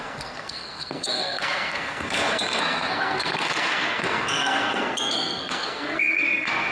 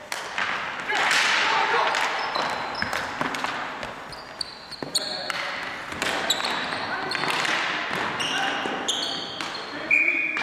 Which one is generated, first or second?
first